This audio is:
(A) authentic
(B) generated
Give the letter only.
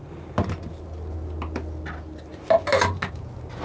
A